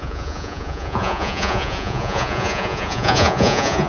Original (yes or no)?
no